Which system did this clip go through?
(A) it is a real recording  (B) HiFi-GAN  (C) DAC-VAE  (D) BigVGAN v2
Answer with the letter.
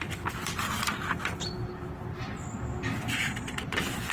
D